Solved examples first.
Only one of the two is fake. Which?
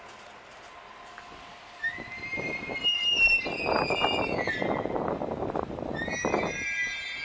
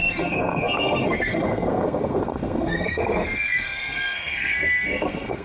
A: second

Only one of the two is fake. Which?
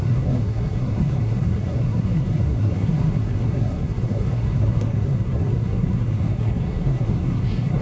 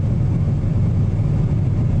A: first